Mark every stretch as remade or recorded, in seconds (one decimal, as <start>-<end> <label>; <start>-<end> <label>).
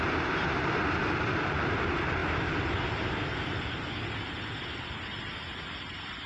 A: 0.0-2.2 remade; 2.2-6.3 recorded